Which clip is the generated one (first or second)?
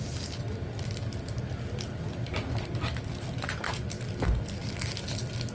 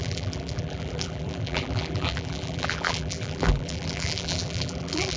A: second